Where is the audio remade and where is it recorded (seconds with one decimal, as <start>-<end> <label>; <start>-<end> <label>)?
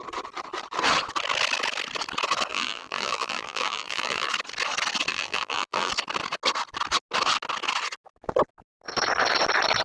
0.0-2.5 recorded; 2.5-4.3 remade; 4.3-5.1 recorded; 5.1-5.9 remade; 5.9-9.8 recorded